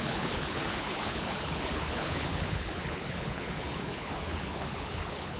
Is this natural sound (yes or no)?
no